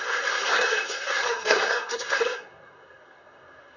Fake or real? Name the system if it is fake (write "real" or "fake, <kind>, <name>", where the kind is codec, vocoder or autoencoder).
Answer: fake, codec, SNAC